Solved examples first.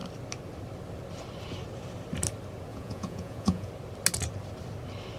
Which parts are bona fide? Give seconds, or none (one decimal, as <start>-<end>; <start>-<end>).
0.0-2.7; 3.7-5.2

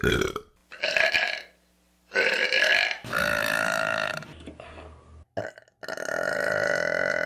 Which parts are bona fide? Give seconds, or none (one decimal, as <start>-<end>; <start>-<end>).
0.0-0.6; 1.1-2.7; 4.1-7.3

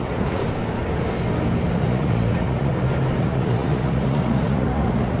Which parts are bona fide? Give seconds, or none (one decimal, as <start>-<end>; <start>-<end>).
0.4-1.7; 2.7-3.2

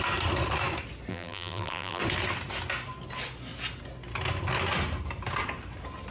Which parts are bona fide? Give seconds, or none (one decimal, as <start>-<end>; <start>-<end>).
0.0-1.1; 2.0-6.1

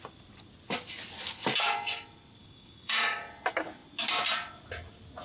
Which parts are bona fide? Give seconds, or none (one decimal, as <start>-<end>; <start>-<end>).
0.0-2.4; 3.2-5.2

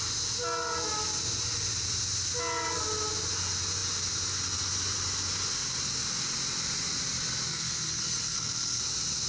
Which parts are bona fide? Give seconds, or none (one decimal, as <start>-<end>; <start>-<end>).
0.0-7.5; 8.8-9.3

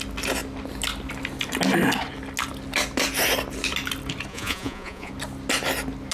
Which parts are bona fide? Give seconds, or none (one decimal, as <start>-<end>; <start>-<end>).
0.0-4.3; 5.1-6.1